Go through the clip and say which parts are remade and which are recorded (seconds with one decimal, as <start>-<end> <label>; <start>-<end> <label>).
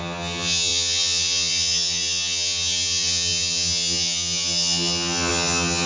0.0-5.9 remade